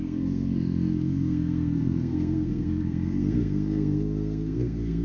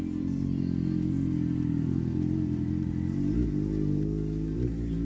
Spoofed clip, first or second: first